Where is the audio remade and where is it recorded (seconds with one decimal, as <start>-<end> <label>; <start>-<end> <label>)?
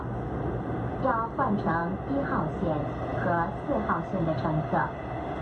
0.0-5.4 recorded